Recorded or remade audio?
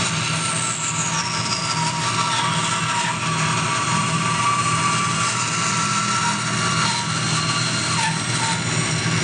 recorded